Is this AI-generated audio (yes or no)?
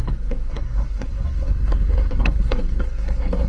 yes